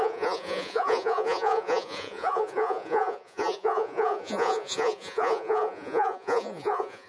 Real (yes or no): no